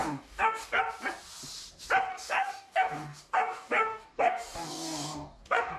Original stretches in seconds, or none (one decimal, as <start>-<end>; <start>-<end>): 0.8-2.1